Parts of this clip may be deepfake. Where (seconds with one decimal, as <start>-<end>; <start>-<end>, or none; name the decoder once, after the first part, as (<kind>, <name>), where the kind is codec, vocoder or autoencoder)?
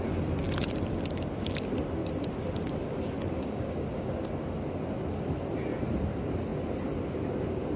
3.4-4.1 (codec, DAC)